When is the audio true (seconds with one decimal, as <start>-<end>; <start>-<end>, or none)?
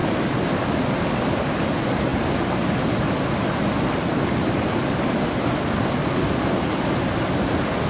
0.0-7.9